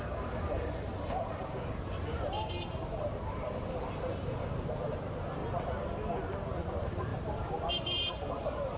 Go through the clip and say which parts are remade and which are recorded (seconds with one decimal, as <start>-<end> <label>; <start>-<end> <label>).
0.0-5.4 remade; 5.4-6.3 recorded; 6.3-8.8 remade